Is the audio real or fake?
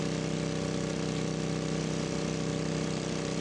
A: fake